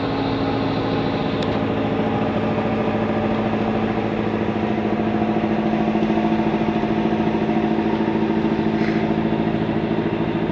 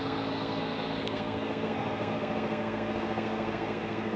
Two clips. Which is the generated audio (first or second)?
second